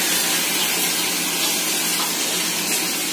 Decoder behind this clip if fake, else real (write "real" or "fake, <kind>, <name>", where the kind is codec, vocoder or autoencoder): real